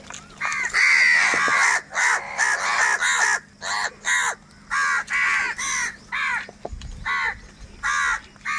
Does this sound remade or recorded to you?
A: recorded